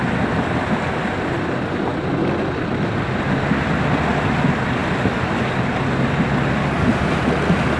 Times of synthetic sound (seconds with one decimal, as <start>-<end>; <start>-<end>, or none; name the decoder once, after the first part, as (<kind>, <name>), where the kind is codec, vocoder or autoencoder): none